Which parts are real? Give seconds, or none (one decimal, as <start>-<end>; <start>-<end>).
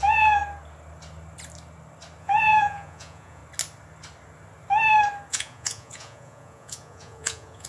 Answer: 0.4-2.2; 3.4-5.3